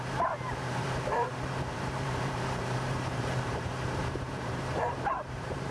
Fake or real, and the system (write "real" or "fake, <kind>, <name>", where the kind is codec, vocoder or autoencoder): fake, vocoder, BigVGAN v2